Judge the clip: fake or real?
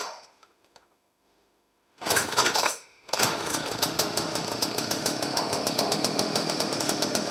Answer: fake